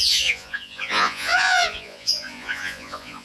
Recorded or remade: remade